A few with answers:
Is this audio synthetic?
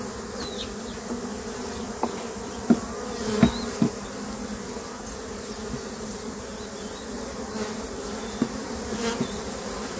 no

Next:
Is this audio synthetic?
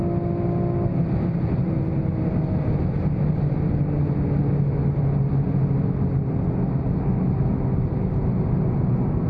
no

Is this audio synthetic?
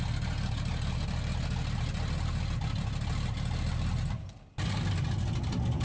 no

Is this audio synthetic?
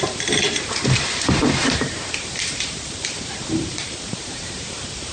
yes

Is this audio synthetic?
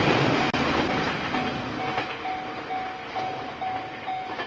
no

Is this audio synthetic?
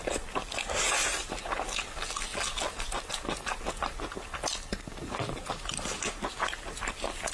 no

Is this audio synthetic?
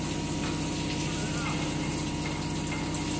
no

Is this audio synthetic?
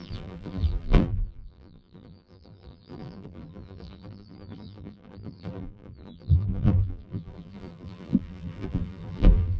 yes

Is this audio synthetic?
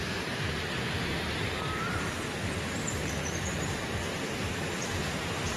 yes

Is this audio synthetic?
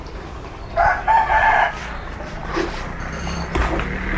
yes